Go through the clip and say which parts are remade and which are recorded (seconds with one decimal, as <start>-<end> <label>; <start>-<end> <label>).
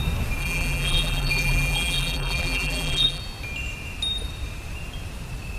0.0-0.4 recorded; 0.4-3.2 remade; 3.2-5.6 recorded